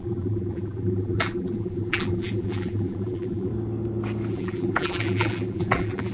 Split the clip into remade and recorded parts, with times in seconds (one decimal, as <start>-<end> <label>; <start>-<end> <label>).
0.0-3.5 remade; 3.5-4.3 recorded; 4.3-6.1 remade